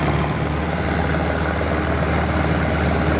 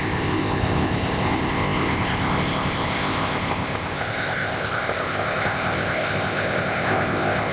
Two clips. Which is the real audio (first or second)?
first